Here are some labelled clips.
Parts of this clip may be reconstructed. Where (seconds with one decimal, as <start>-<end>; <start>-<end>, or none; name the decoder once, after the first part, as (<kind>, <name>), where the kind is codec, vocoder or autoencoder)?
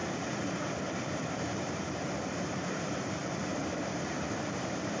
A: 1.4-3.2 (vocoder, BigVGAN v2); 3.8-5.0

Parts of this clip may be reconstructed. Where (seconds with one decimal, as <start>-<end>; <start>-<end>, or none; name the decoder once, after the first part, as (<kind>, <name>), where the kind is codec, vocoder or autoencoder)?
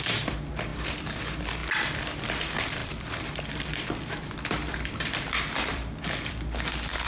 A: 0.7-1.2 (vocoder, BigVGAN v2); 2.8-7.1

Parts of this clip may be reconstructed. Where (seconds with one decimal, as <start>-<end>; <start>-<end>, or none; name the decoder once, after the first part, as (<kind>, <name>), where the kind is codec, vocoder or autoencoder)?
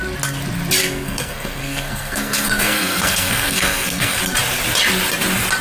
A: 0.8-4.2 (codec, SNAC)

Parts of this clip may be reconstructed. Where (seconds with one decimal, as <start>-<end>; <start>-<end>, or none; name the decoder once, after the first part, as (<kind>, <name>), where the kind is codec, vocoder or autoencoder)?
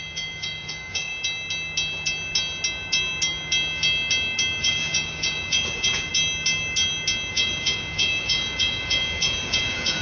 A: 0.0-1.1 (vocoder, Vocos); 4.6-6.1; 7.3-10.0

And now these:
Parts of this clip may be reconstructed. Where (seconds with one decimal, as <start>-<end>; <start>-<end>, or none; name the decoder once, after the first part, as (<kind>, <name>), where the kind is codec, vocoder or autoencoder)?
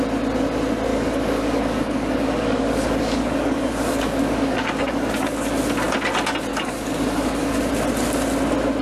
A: 0.9-5.5 (codec, DAC); 6.5-7.7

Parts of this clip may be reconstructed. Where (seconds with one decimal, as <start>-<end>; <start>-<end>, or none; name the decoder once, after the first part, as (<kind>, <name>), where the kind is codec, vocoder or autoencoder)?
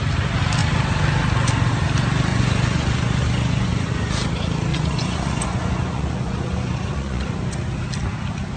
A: 2.3-4.1 (vocoder, Vocos); 4.7-7.3